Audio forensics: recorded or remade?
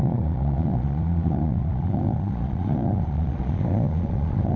remade